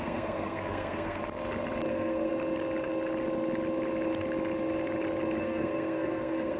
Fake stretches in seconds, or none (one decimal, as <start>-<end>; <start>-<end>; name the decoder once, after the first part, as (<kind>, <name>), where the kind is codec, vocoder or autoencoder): 0.0-1.2 (codec, SNAC); 1.9-2.3; 5.4-6.6